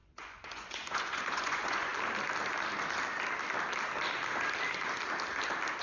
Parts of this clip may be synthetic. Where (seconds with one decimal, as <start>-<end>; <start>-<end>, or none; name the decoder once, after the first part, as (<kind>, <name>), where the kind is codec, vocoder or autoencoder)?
0.0-1.9 (vocoder, Vocos)